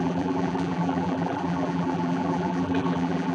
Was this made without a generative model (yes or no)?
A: no